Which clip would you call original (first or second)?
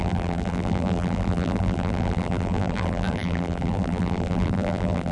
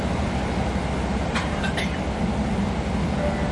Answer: second